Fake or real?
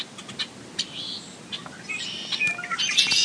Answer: real